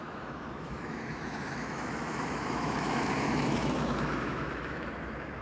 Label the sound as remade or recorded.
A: remade